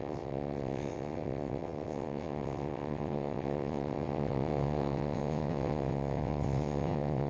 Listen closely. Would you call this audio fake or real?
fake